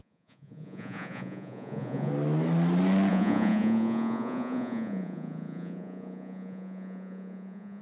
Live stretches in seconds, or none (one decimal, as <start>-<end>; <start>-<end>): 2.1-3.1